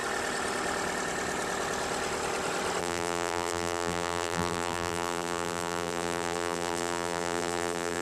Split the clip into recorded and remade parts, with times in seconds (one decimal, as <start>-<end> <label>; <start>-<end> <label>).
0.0-2.8 recorded; 2.8-8.0 remade